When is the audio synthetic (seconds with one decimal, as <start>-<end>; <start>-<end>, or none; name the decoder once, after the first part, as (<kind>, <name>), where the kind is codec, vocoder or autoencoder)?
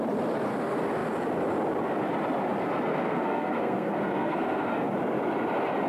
2.9-4.7 (codec, SNAC)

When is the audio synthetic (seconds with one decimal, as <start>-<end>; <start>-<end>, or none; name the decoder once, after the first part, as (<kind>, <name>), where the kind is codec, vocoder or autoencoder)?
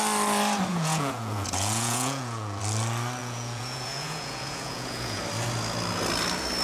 0.7-2.6 (vocoder, Vocos); 3.2-5.2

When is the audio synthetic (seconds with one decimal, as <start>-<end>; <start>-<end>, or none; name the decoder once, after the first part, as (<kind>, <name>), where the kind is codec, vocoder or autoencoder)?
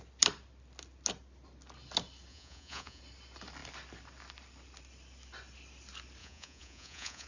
2.3-3.0 (vocoder, Vocos); 6.2-7.3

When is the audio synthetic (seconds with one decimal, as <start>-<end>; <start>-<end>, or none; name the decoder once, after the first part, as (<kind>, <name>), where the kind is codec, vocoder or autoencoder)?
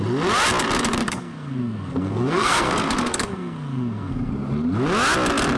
1.0-4.3 (codec, SNAC)